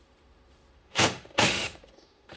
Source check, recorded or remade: remade